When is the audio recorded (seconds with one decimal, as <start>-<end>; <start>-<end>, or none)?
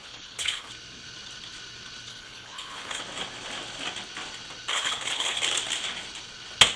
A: 0.7-2.1; 3.0-4.7; 5.4-6.8